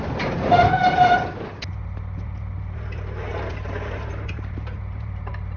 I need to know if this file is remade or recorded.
recorded